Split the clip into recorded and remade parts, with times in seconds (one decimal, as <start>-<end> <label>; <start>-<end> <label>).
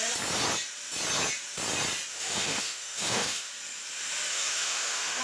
0.0-2.1 recorded; 2.1-3.5 remade; 3.5-4.3 recorded; 4.3-5.2 remade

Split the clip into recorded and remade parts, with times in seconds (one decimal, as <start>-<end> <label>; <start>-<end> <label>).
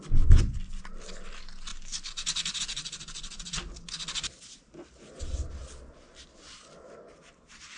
0.0-7.8 recorded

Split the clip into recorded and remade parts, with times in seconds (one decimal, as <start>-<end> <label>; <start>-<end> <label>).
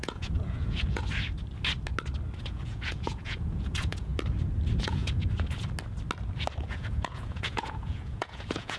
0.0-1.0 remade; 1.0-2.4 recorded; 2.4-4.1 remade; 4.1-4.8 recorded; 4.8-5.2 remade; 5.2-6.7 recorded; 6.7-8.8 remade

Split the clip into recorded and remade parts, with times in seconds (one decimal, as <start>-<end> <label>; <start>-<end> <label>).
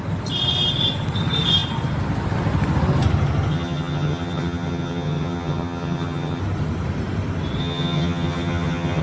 0.0-3.5 recorded; 3.5-6.4 remade; 6.4-7.6 recorded; 7.6-9.0 remade